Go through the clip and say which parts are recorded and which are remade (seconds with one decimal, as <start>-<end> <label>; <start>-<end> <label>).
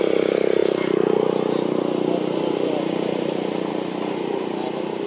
0.0-5.1 recorded